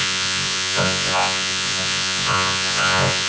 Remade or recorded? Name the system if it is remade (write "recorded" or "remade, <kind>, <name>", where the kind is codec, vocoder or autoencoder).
remade, vocoder, Vocos